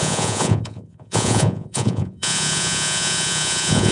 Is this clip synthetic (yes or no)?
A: yes